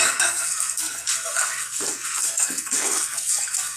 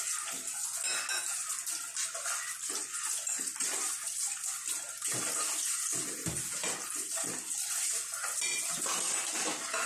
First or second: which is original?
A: second